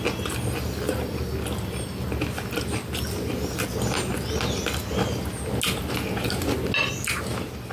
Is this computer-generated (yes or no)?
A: no